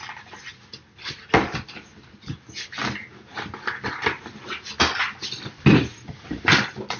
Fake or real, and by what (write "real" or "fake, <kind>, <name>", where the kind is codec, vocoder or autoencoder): real